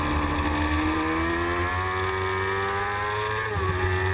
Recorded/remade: recorded